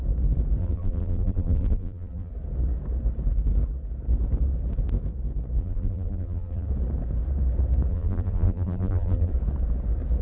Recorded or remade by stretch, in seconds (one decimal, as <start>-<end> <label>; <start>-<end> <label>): 0.0-0.6 recorded; 0.6-2.3 remade; 2.3-5.6 recorded; 5.6-6.7 remade; 6.7-7.9 recorded; 7.9-9.3 remade; 9.3-10.2 recorded